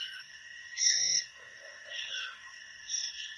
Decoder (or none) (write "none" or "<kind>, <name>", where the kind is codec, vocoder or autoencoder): codec, SNAC